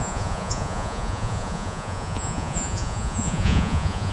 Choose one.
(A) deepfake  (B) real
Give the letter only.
A